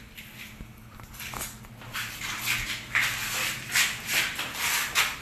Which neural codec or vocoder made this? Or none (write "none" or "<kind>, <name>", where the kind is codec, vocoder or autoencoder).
none